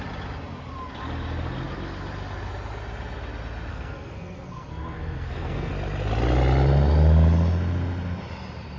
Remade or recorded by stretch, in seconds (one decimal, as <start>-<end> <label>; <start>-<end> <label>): 0.0-3.7 recorded; 3.7-5.7 remade; 5.7-8.8 recorded